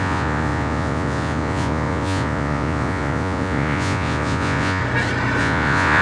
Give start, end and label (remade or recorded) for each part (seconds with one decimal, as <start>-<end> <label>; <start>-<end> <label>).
0.0-4.8 remade; 4.8-5.4 recorded; 5.4-6.0 remade